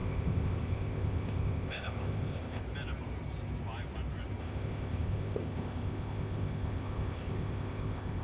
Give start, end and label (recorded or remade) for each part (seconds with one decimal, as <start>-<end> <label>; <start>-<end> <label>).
0.0-2.6 remade; 2.6-4.4 recorded; 4.4-8.2 remade